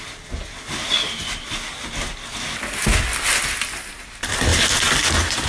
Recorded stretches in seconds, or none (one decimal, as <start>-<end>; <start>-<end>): 0.0-5.5